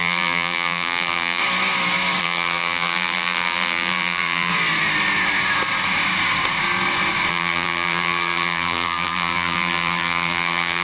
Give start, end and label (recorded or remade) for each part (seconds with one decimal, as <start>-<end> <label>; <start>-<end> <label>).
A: 0.0-1.4 remade; 1.4-2.2 recorded; 2.2-4.5 remade; 4.5-7.3 recorded; 7.3-10.8 remade